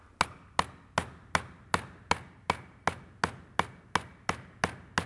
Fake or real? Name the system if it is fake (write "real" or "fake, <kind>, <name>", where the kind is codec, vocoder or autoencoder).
real